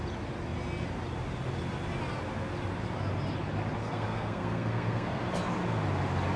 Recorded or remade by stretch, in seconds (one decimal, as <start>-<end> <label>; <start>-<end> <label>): 0.0-3.8 recorded; 3.8-5.3 remade; 5.3-6.4 recorded